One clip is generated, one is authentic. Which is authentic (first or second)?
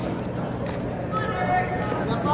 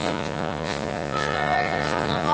first